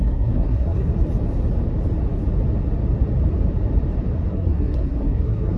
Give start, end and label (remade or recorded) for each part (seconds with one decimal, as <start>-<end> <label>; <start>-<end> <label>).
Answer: 0.0-0.9 remade; 0.9-4.3 recorded; 4.3-5.6 remade